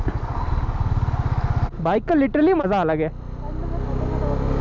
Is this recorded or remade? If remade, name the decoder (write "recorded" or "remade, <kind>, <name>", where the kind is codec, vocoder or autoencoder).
recorded